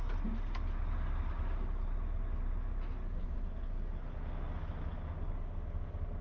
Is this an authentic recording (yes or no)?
yes